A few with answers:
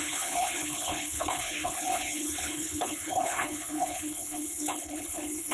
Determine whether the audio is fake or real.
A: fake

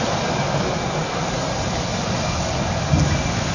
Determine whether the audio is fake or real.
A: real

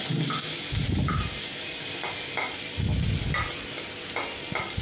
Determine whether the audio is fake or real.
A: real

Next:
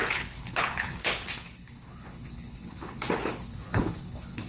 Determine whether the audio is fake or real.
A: fake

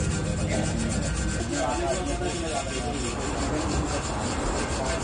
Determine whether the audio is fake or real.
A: real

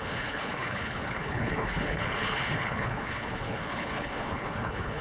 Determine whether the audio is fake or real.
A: fake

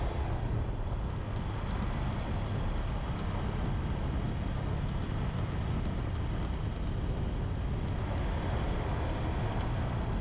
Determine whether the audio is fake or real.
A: real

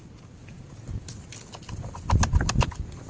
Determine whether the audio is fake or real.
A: real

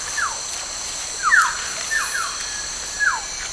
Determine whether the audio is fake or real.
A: real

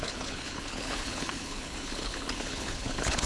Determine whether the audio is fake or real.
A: fake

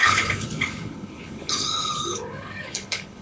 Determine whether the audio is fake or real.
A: fake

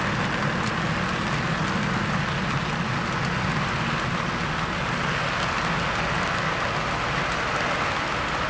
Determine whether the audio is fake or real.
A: real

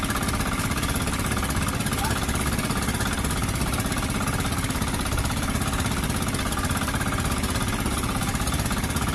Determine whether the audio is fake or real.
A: real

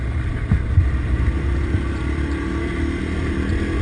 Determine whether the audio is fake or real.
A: real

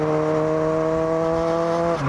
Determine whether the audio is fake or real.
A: real